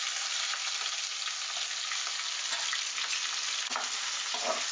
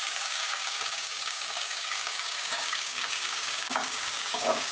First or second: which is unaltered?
first